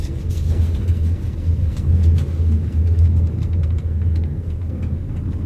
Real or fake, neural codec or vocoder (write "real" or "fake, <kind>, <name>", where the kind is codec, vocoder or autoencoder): fake, codec, SNAC